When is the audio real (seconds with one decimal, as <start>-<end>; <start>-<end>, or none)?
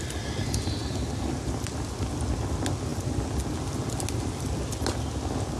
0.0-5.6